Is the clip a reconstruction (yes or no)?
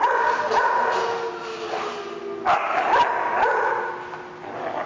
no